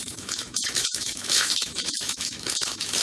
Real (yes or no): no